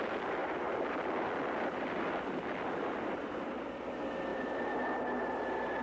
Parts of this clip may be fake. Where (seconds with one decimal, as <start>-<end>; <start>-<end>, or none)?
0.4-3.9; 4.3-5.0